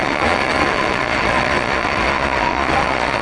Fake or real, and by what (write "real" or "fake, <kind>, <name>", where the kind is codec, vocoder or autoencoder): fake, vocoder, Vocos